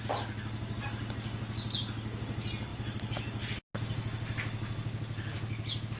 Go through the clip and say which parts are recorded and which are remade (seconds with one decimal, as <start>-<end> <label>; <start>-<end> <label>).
0.0-6.0 recorded